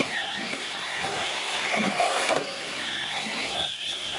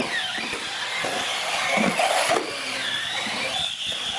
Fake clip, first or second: first